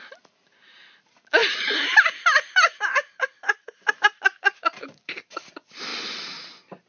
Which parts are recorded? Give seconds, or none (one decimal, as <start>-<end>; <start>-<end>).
0.0-1.4; 5.5-6.9